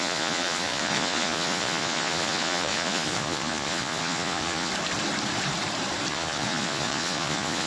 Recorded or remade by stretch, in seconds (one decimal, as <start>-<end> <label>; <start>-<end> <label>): 0.0-4.7 remade; 4.7-6.1 recorded; 6.1-7.7 remade